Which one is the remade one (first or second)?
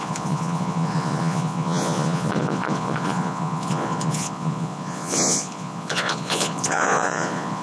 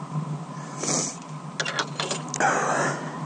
first